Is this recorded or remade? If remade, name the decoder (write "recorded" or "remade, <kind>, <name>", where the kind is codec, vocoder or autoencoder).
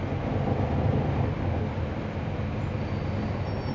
recorded